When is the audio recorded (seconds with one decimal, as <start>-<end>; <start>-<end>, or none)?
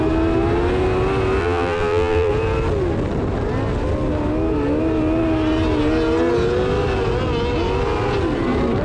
0.0-1.4; 2.3-8.8